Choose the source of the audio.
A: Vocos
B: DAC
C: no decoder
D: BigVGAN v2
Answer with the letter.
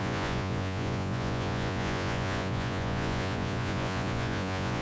A